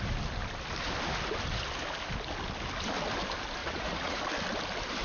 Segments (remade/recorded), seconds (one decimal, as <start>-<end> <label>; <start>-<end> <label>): 0.0-3.6 recorded; 3.6-4.2 remade; 4.2-5.0 recorded